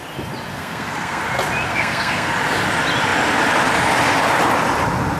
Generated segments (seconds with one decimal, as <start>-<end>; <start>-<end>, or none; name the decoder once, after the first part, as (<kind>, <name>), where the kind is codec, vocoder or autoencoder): 0.5-1.2 (codec, SNAC); 1.7-2.3